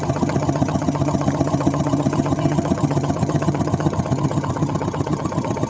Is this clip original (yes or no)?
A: no